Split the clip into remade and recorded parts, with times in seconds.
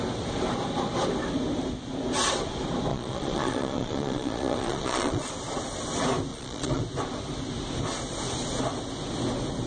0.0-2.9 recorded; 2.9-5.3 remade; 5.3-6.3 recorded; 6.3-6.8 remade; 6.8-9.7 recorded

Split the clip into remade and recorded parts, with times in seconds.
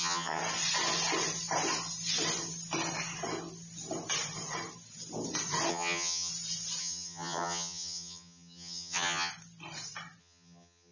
0.0-0.4 remade; 0.4-5.7 recorded; 5.7-6.3 remade; 6.3-6.8 recorded; 6.8-9.3 remade; 9.3-10.2 recorded; 10.2-10.9 remade